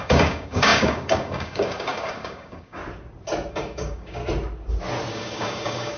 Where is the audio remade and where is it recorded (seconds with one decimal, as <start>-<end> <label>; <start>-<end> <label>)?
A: 0.0-2.8 remade; 2.8-3.5 recorded; 3.5-4.2 remade; 4.2-5.1 recorded; 5.1-6.0 remade